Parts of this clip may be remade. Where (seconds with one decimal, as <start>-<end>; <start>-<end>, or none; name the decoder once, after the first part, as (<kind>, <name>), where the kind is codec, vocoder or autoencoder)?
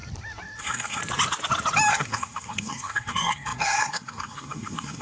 0.6-1.0 (codec, SNAC); 1.9-5.0